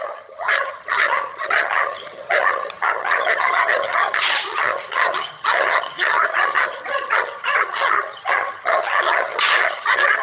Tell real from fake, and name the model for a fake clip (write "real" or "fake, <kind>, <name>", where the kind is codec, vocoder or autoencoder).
fake, vocoder, HiFi-GAN